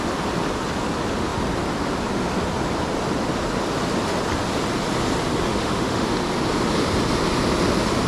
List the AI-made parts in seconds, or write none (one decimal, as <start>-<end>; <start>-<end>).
5.5-6.1